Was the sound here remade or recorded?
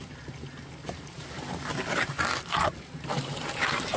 recorded